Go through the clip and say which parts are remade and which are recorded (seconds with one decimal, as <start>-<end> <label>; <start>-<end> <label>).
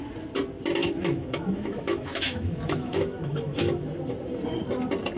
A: 0.0-0.8 recorded; 0.8-3.9 remade; 3.9-5.2 recorded